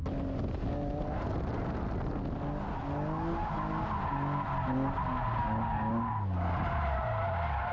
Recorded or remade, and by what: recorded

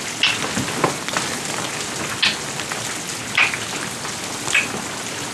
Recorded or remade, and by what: recorded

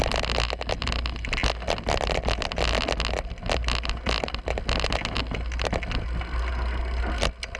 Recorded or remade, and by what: recorded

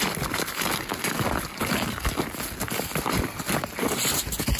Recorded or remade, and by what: recorded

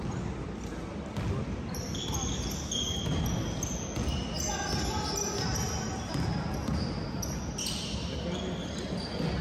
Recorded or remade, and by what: recorded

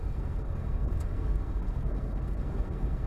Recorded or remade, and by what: remade, codec, SNAC